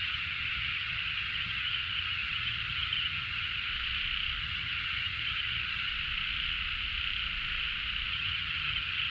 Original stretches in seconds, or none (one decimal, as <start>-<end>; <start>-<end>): 3.7-4.4; 5.9-8.1